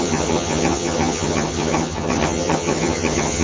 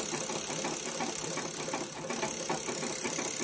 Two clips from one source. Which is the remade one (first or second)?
first